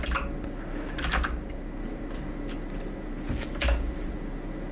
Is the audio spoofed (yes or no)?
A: no